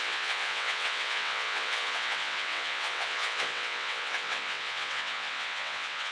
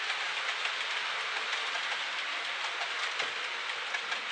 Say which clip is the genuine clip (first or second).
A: second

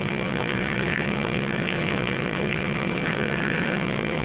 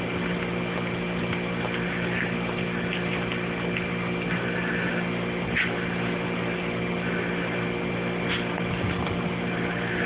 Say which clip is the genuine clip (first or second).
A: second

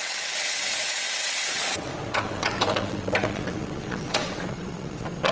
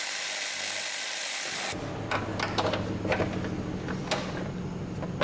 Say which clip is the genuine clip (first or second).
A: second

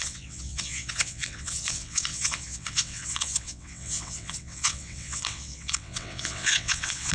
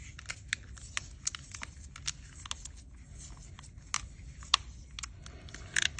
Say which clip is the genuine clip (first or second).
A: second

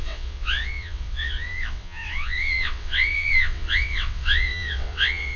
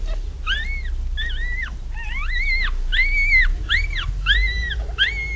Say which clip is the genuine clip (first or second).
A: second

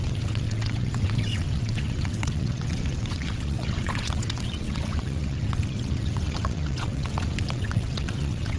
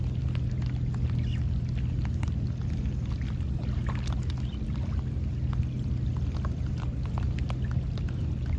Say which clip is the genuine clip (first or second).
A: second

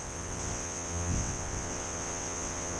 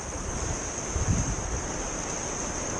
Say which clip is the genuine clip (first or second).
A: second